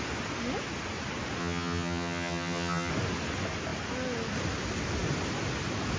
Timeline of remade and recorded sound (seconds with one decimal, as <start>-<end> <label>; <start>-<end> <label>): 0.0-1.4 recorded; 1.4-2.9 remade; 2.9-6.0 recorded